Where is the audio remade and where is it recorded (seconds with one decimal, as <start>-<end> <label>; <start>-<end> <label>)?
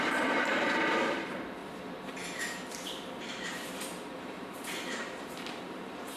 0.0-6.2 remade